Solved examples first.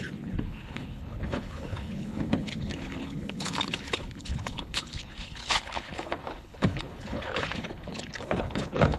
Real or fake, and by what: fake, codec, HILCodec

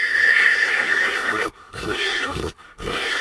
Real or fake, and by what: fake, codec, SNAC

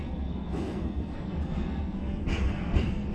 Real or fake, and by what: fake, codec, SNAC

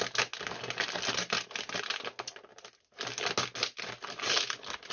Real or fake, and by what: real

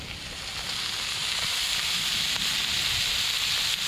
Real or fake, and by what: real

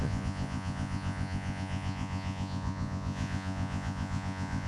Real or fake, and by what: fake, vocoder, Vocos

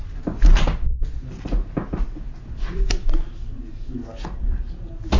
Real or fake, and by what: real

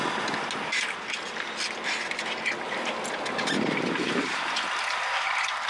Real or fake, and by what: real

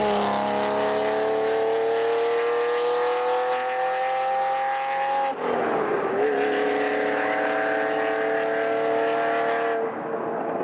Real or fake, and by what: real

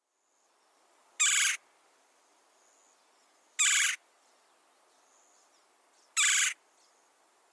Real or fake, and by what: real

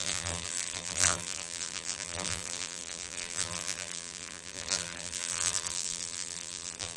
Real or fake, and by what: fake, vocoder, BigVGAN v2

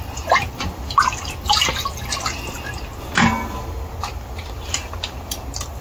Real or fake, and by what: real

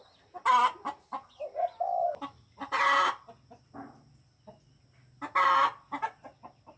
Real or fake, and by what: real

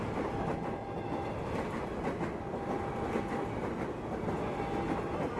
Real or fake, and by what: real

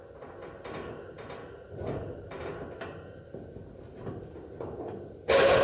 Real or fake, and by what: real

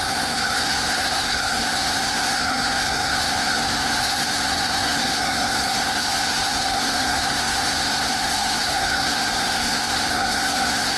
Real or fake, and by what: fake, codec, SNAC